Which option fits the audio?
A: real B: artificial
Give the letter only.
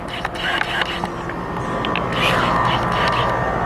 A